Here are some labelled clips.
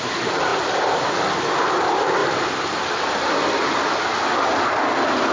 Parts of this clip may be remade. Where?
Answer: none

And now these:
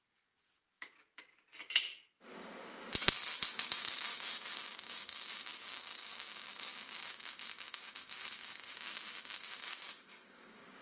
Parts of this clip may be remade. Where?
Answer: 0.0-1.3 (codec, DAC); 3.5-10.8

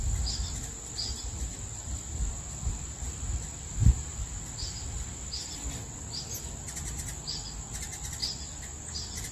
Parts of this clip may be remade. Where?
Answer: none

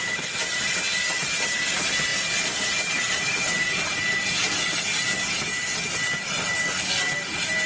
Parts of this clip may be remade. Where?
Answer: none

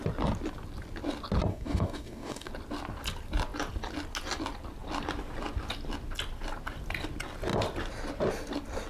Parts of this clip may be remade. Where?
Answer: 1.5-2.5 (codec, DAC)

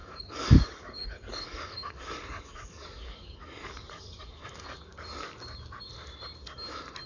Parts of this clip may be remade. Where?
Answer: 0.0-4.9 (codec, DAC)